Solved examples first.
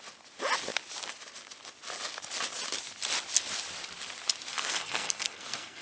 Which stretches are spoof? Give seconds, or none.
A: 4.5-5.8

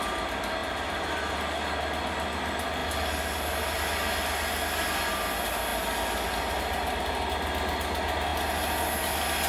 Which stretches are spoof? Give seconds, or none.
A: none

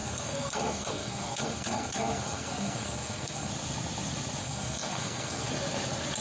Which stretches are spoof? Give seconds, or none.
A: 0.0-3.5; 4.4-5.5

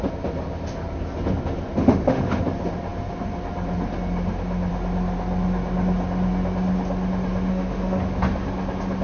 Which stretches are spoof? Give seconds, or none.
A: 1.8-2.4; 7.5-8.0

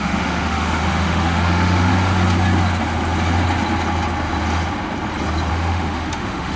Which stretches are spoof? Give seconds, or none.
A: 0.0-1.9; 5.5-6.6